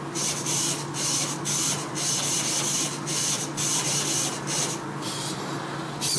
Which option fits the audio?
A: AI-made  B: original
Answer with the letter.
B